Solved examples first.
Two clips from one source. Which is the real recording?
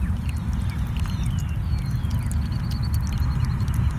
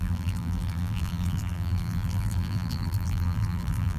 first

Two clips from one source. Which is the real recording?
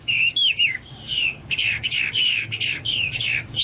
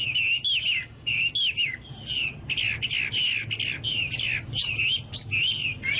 second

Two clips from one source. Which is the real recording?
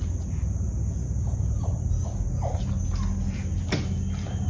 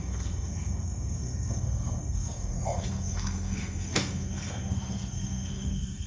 first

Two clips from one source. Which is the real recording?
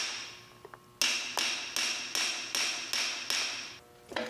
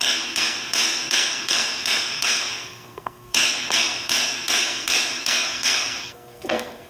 first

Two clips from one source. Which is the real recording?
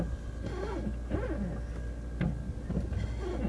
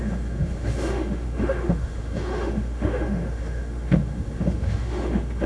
first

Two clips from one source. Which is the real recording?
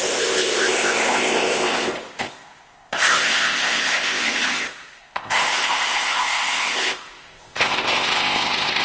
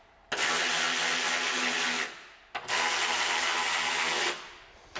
second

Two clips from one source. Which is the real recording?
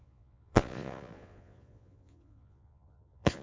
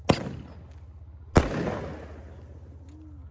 second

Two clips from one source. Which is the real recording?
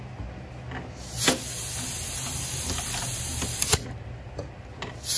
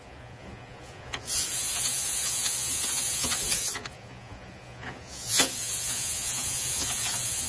first